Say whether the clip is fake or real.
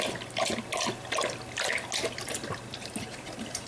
real